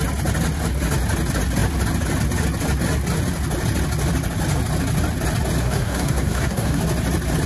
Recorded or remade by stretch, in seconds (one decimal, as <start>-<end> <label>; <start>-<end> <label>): 0.0-5.6 recorded; 5.6-6.8 remade; 6.8-7.5 recorded